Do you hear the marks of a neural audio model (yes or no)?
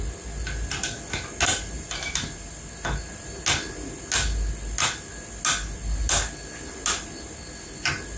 no